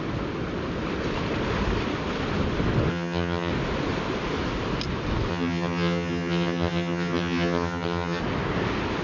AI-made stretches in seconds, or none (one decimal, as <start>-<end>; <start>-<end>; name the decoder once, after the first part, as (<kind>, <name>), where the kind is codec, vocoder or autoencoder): 2.9-3.5 (vocoder, HiFi-GAN); 5.3-8.2